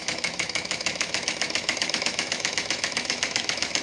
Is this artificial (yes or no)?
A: yes